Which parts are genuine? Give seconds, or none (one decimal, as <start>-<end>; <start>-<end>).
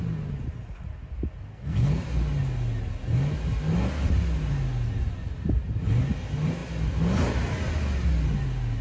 0.0-1.5; 2.0-8.8